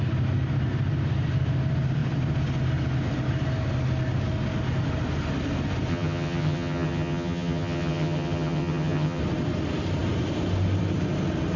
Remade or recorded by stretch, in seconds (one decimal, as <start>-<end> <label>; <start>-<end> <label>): 0.0-5.9 recorded; 5.9-9.2 remade; 9.2-11.6 recorded